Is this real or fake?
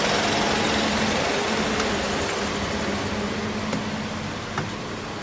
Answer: real